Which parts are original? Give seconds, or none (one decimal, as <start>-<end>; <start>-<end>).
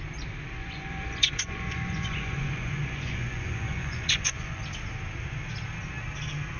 0.0-0.6; 4.6-6.6